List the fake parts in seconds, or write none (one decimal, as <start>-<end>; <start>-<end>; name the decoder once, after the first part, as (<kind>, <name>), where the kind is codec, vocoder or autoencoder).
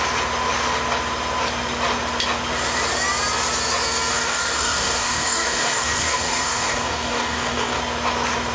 4.1-7.8 (codec, DAC)